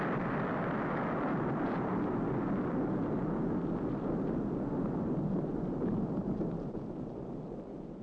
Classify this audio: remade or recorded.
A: recorded